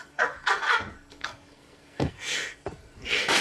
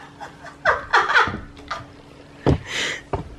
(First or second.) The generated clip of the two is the first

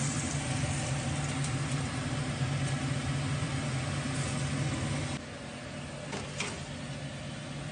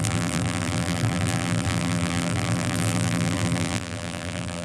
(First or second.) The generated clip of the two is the second